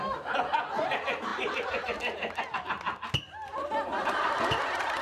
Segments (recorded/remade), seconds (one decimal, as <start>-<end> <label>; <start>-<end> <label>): 0.0-5.0 recorded